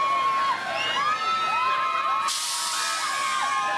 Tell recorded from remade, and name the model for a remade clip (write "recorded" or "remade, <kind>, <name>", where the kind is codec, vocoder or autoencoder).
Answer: recorded